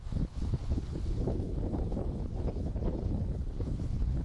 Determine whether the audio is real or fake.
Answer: fake